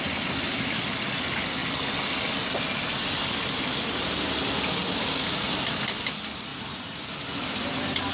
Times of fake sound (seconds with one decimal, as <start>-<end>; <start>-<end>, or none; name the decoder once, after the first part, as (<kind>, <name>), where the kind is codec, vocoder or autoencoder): 6.5-7.0 (vocoder, Vocos)